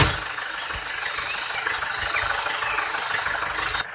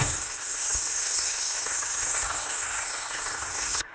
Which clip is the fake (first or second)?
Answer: second